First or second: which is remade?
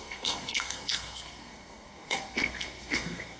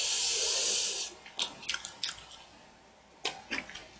first